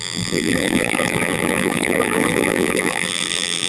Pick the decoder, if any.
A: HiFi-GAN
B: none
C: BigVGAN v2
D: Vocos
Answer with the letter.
C